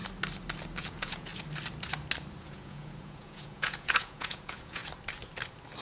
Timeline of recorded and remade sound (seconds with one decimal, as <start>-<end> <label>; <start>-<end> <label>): 0.0-0.8 recorded; 0.8-1.3 remade; 1.3-2.4 recorded; 2.4-4.8 remade; 4.8-5.8 recorded